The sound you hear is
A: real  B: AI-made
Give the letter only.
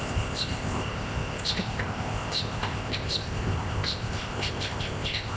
B